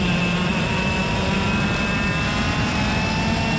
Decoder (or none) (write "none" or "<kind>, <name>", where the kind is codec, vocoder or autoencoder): none